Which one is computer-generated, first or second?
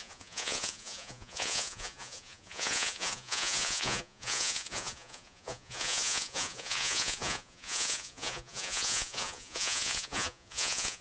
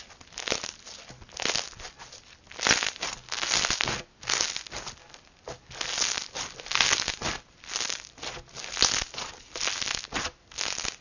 first